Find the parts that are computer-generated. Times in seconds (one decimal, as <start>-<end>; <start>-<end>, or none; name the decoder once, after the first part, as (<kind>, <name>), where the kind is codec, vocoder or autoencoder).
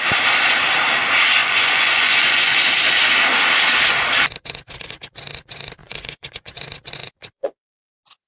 1.4-2.6 (vocoder, Vocos); 5.8-6.6; 7.0-7.9